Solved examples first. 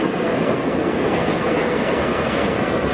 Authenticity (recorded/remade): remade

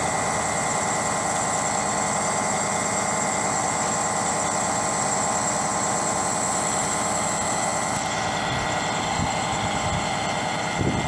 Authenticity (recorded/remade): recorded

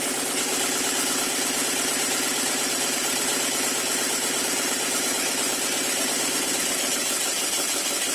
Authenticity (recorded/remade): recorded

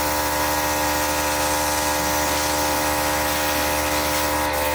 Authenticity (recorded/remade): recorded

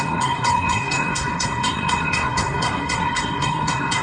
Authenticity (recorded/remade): remade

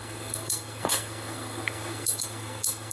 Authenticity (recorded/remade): remade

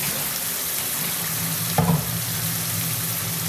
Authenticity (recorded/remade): recorded